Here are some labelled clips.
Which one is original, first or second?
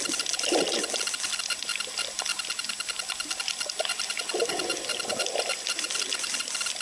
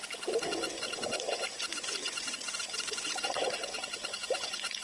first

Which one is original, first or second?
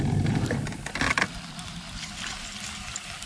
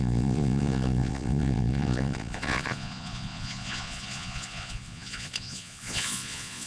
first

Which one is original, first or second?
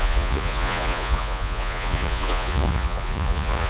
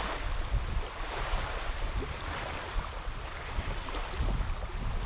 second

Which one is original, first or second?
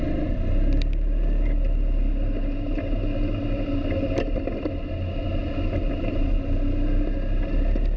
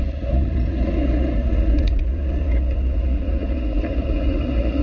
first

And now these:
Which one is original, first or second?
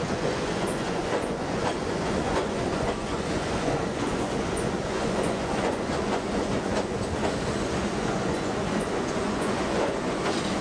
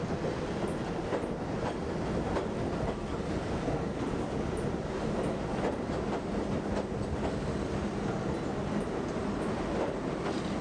second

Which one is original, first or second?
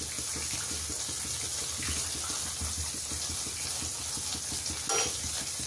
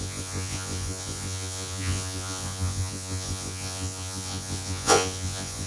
first